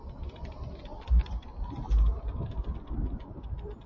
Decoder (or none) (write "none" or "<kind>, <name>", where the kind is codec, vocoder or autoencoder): none